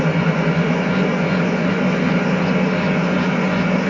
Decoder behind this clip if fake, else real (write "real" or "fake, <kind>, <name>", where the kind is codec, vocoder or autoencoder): fake, vocoder, Vocos